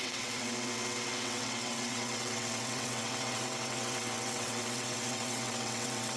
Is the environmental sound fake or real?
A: fake